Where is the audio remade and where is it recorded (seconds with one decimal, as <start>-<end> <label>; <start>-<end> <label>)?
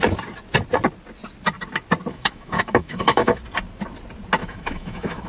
0.0-2.1 recorded; 2.1-3.4 remade; 3.4-4.4 recorded; 4.4-5.3 remade